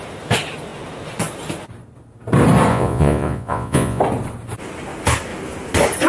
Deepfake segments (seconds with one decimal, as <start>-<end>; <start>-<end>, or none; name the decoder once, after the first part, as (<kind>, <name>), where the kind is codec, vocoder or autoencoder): 2.7-4.0 (vocoder, Vocos)